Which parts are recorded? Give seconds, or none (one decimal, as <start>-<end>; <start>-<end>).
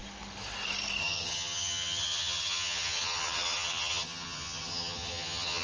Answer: 0.0-1.0